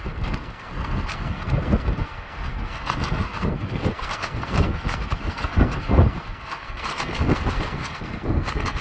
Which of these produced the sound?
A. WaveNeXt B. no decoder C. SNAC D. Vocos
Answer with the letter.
C